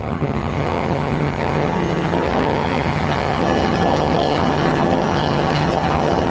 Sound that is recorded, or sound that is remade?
remade